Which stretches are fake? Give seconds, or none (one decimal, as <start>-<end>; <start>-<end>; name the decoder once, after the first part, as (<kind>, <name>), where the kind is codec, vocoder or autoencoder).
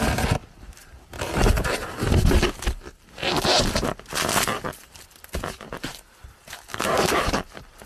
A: 6.7-7.4 (codec, DAC)